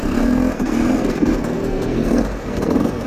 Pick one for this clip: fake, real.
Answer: fake